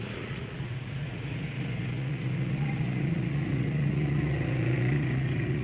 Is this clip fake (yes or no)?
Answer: yes